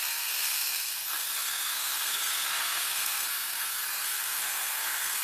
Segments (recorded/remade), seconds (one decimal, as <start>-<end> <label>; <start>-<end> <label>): 0.0-5.2 remade